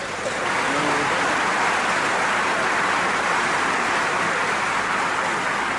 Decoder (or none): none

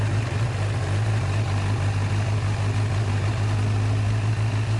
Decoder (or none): none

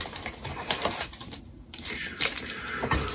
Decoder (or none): vocoder, BigVGAN v2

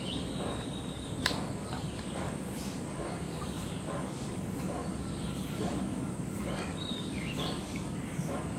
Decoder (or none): codec, DAC